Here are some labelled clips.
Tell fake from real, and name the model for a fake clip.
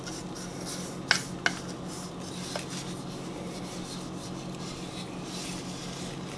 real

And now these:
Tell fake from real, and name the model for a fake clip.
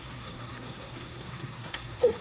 fake, codec, SNAC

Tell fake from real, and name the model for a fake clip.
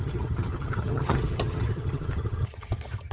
fake, vocoder, HiFi-GAN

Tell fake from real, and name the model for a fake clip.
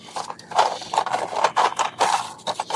real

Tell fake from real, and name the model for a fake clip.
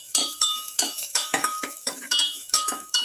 fake, autoencoder, DAC-VAE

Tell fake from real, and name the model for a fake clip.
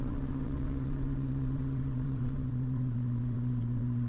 fake, vocoder, WaveNeXt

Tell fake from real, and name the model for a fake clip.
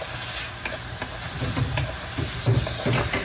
real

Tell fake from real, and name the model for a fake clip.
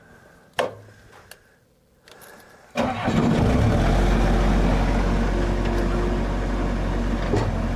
real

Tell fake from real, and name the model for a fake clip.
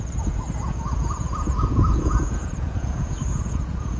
fake, vocoder, Vocos